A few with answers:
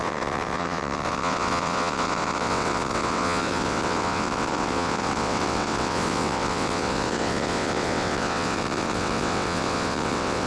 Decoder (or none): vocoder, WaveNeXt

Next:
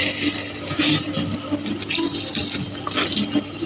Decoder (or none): none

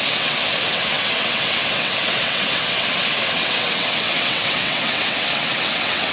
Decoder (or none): vocoder, WaveNeXt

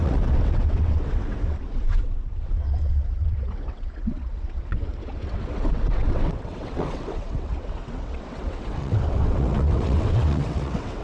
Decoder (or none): vocoder, WaveNeXt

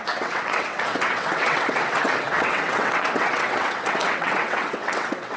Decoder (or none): vocoder, WaveNeXt